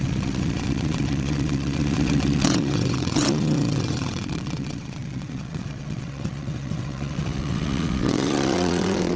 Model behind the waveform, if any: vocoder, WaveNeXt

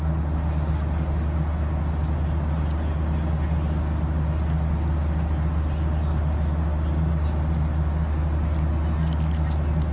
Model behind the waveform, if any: none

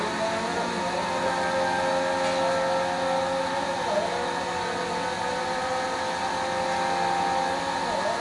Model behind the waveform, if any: none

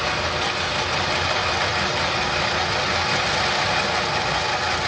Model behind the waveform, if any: none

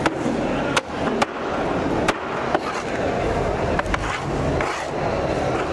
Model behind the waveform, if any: none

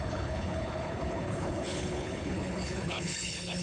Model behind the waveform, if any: codec, HILCodec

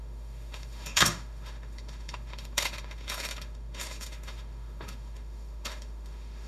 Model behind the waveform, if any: autoencoder, DAC-VAE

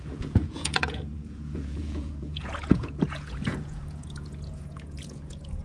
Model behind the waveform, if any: vocoder, Vocos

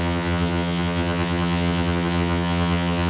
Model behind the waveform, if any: vocoder, HiFi-GAN